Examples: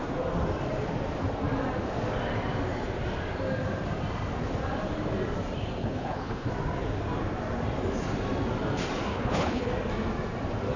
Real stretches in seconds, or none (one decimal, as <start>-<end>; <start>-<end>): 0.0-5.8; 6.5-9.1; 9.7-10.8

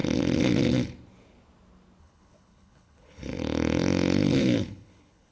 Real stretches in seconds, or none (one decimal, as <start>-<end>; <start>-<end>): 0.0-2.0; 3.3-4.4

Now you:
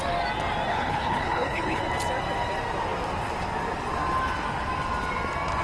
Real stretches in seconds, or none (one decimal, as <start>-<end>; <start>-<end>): 0.0-0.7; 1.8-5.6

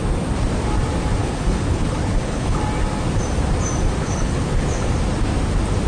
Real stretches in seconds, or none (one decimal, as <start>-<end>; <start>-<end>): 0.0-1.2; 2.6-4.0; 4.9-5.9